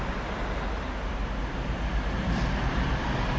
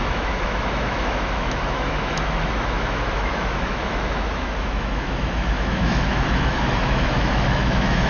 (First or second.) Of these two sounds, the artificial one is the second